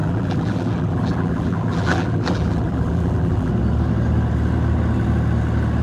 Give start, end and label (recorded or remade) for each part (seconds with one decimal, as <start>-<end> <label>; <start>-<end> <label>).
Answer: 0.0-3.5 remade; 3.5-5.8 recorded